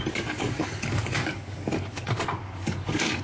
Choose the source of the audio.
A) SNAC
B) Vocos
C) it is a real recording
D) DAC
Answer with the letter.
D